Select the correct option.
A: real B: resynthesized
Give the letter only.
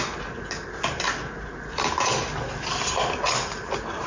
A